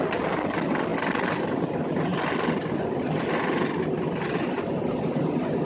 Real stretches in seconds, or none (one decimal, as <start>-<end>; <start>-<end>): 0.0-0.9; 1.4-5.6